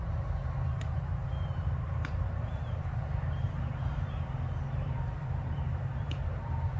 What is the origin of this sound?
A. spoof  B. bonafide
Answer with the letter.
A